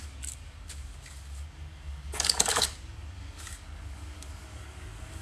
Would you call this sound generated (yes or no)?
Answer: yes